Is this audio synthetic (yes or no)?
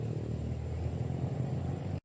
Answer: no